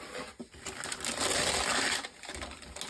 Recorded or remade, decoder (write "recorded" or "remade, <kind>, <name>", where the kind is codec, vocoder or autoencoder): recorded